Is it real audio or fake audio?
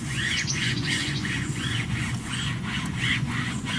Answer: fake